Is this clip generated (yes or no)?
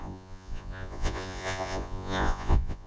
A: yes